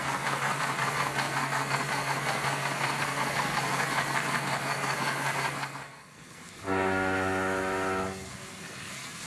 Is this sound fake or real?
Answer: fake